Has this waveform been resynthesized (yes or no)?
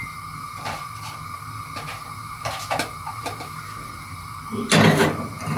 no